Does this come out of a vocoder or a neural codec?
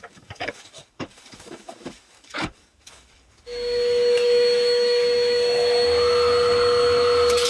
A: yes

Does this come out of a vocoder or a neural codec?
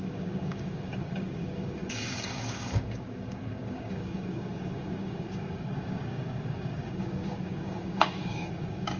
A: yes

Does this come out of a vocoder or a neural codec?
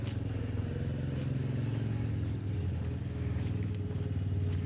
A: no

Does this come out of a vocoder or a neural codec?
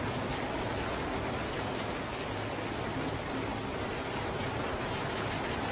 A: no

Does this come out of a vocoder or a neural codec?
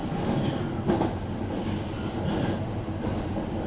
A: no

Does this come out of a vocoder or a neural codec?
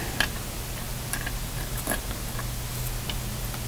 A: no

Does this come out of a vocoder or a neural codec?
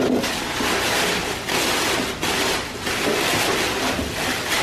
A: no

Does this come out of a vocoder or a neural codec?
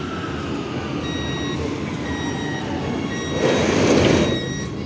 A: no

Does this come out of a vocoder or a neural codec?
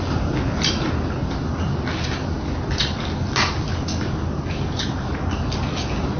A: no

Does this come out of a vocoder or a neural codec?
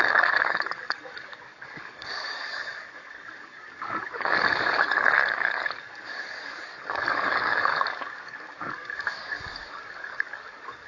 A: yes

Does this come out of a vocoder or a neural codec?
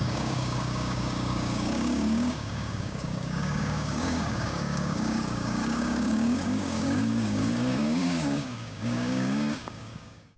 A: yes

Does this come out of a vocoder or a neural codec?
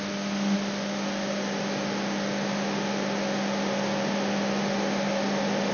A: no